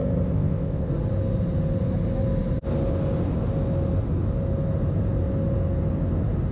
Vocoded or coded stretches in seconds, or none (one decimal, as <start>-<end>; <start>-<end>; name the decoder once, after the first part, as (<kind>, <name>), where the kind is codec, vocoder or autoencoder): 0.0-0.9 (codec, ZipCodec)